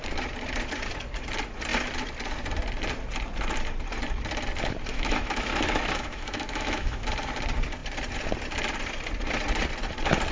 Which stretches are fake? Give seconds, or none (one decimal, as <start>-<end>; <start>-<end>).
4.9-7.1